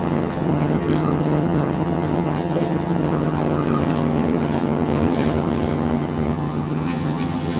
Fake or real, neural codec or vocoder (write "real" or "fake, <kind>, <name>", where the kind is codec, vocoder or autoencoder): fake, vocoder, HiFi-GAN